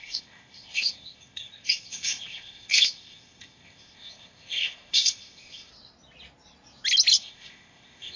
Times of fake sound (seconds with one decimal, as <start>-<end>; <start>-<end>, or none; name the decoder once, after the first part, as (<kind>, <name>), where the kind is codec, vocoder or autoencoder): 0.0-5.7 (codec, ZipCodec); 7.2-8.2

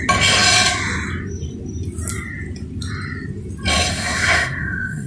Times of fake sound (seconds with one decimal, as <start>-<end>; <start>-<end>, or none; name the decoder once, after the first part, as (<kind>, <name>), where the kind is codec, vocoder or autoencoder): 3.9-5.1 (codec, SNAC)

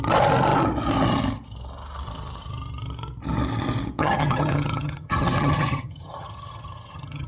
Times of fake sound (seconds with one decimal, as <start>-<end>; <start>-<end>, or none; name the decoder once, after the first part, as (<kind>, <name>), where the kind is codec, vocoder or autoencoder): 4.0-7.3 (vocoder, HiFi-GAN)

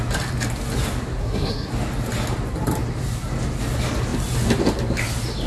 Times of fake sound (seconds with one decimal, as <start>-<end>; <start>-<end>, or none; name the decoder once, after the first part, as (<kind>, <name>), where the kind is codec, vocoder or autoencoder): 1.2-1.7 (codec, SNAC)

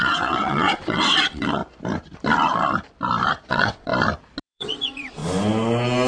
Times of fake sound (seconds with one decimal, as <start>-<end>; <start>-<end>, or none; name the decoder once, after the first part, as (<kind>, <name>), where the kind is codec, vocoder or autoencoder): 0.0-1.6 (vocoder, WaveNeXt); 3.5-3.9; 4.4-5.2

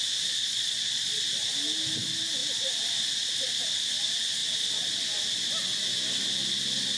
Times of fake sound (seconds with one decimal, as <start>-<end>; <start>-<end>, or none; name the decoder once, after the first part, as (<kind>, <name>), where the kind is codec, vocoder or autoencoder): 0.4-1.2 (vocoder, Vocos)